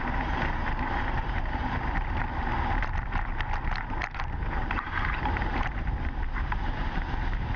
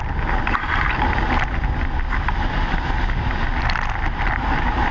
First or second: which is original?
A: second